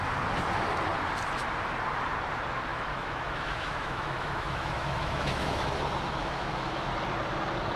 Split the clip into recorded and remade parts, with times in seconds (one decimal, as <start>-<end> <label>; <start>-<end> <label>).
0.0-2.7 recorded; 2.7-5.7 remade; 5.7-6.2 recorded; 6.2-6.9 remade; 6.9-7.8 recorded